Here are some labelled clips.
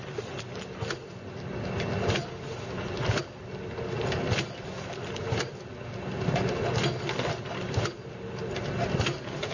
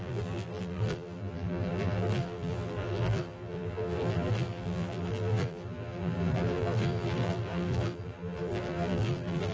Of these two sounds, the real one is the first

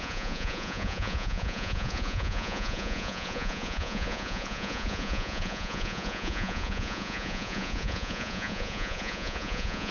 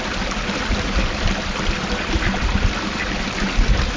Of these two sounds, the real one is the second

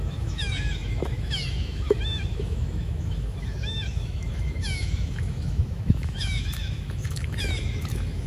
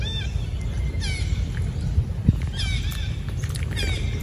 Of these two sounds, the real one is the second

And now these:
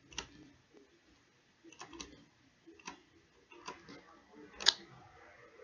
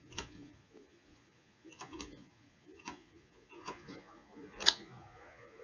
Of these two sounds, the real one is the first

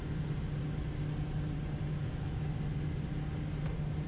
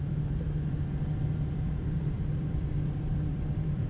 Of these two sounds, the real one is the first